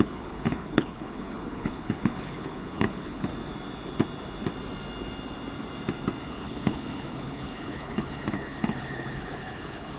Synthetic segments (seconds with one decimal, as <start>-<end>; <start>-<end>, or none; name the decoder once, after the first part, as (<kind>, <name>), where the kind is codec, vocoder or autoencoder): 0.0-3.3 (codec, HILCodec); 6.2-10.0